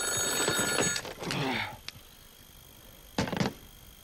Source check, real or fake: real